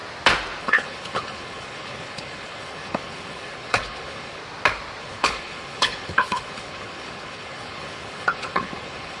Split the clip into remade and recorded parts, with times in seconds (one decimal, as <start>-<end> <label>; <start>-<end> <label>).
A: 0.0-0.6 recorded; 0.6-4.4 remade; 4.4-5.0 recorded; 5.0-9.2 remade

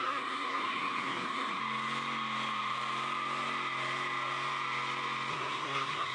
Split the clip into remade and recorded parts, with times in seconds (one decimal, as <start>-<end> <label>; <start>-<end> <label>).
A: 0.0-1.6 remade; 1.6-5.3 recorded; 5.3-6.1 remade